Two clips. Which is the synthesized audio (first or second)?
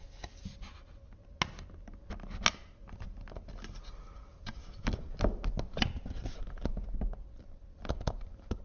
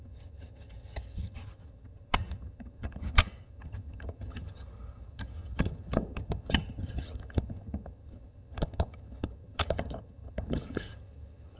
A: second